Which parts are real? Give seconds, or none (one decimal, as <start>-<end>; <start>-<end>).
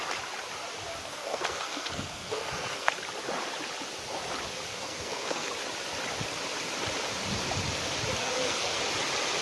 0.0-1.0; 2.9-4.7; 5.5-8.2; 8.8-9.4